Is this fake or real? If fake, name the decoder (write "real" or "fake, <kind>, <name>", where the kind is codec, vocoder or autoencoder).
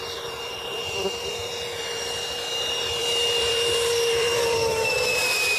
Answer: fake, vocoder, BigVGAN v2